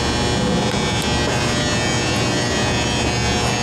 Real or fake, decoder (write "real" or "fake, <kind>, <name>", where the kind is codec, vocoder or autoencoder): real